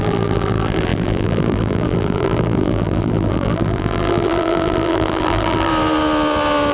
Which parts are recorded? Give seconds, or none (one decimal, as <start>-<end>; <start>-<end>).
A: 5.7-6.7

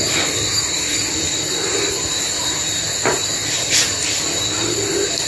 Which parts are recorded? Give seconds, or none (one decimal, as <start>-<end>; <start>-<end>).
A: 0.0-3.4; 4.1-5.3

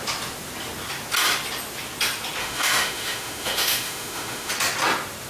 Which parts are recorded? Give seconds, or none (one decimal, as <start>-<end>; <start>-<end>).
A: 0.0-2.4; 4.5-5.3